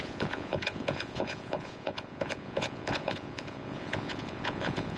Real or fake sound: fake